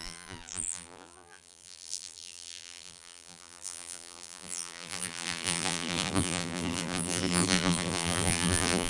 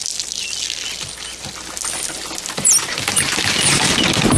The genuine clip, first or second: second